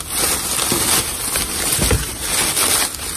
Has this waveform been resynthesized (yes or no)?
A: no